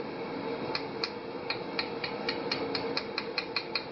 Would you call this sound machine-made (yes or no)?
no